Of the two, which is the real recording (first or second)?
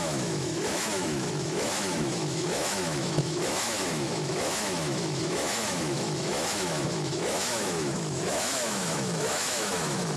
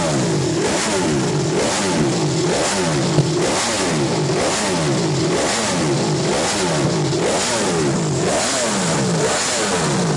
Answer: second